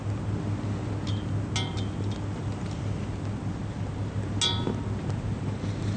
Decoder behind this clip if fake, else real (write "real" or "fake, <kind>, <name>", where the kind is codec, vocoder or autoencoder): real